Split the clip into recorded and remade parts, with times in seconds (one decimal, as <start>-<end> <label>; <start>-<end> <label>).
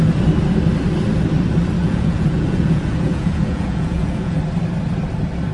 0.0-1.8 recorded; 1.8-4.4 remade; 4.4-5.5 recorded